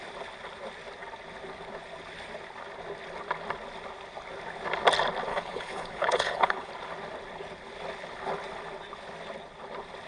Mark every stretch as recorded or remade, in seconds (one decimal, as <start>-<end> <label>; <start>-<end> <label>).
0.0-5.3 recorded; 5.3-6.7 remade; 6.7-10.1 recorded